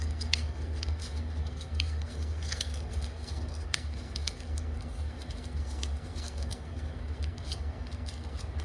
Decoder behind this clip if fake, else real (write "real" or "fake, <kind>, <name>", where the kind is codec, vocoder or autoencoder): fake, codec, SNAC